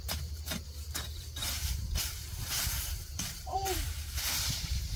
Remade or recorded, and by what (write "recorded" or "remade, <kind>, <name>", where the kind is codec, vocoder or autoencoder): remade, vocoder, BigVGAN v2